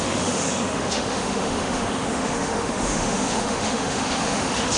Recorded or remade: remade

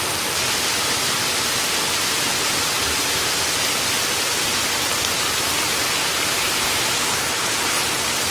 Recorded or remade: recorded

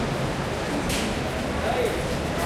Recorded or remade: recorded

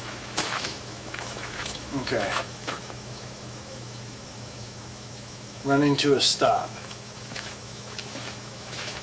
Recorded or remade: remade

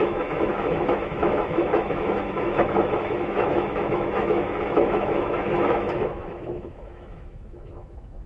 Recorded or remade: remade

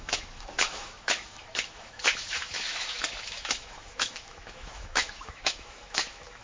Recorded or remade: remade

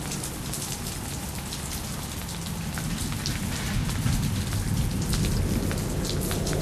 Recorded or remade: recorded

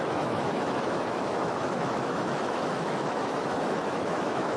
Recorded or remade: remade